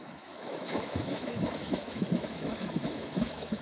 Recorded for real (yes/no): no